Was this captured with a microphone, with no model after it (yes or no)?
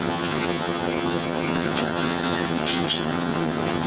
no